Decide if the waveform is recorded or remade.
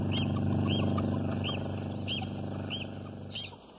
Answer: recorded